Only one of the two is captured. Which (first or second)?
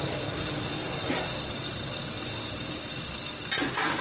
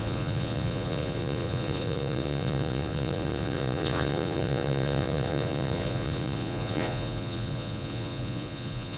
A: first